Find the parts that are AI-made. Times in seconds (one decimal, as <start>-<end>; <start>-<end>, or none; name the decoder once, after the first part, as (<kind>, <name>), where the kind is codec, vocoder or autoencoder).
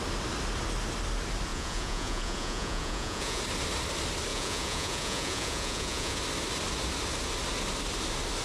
1.5-3.4 (vocoder, Vocos); 4.3-6.2